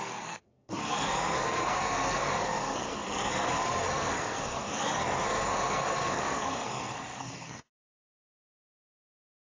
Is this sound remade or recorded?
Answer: remade